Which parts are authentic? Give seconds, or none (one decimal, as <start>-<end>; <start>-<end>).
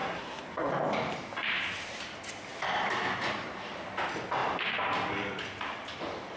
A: 0.7-6.4